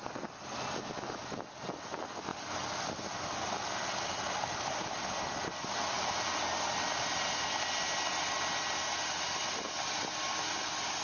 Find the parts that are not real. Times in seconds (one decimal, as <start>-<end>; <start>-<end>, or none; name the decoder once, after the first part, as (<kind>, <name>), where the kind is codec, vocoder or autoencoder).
none